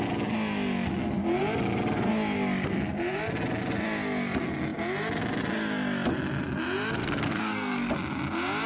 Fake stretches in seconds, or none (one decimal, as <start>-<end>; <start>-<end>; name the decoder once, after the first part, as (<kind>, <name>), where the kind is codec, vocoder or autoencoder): 7.0-7.9 (codec, SNAC)